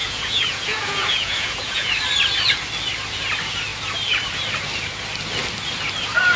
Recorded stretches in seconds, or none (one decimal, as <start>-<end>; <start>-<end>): 1.9-6.4